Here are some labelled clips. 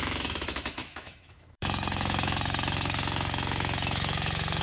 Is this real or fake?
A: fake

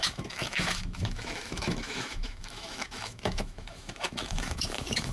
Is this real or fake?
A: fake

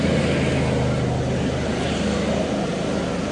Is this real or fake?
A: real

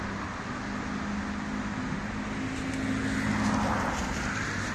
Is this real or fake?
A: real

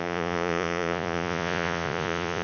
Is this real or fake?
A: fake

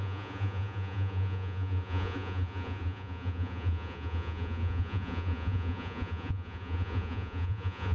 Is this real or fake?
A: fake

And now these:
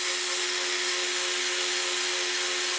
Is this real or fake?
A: real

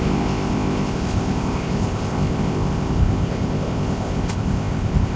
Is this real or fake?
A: fake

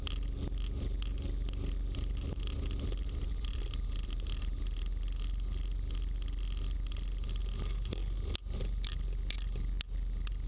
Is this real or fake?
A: real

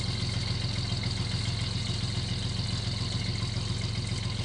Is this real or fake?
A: real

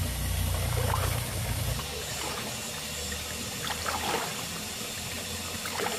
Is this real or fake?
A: real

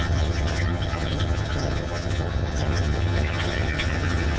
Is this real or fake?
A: fake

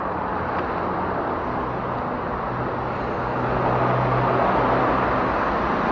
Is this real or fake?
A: real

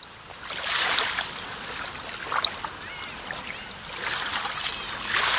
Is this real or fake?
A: real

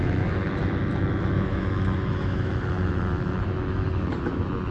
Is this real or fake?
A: fake